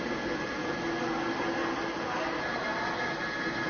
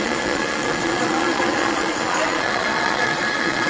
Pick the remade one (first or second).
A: second